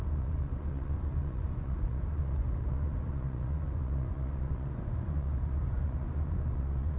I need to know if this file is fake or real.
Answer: fake